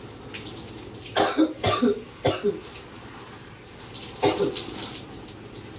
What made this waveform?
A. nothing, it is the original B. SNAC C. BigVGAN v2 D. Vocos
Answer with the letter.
A